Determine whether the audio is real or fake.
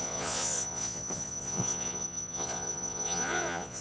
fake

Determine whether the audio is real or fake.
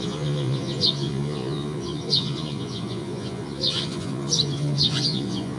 fake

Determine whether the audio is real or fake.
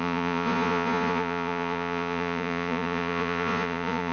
fake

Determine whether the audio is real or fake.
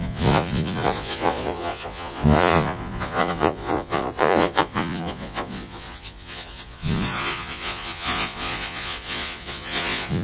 fake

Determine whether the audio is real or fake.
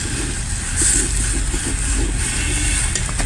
real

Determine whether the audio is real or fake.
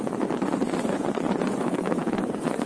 fake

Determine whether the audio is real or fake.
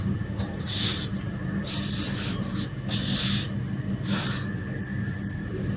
real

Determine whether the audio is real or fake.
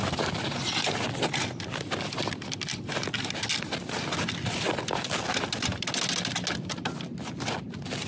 real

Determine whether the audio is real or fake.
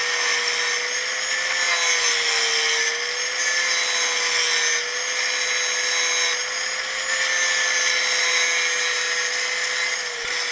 real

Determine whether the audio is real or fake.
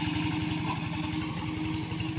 real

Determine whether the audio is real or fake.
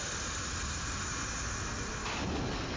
real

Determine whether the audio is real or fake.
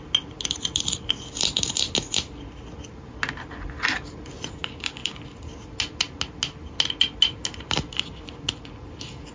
real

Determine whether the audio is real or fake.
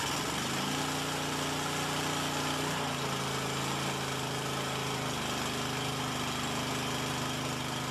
real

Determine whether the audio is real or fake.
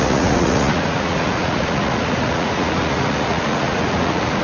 fake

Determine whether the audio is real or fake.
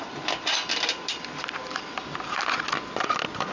real